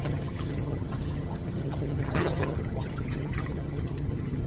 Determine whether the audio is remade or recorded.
remade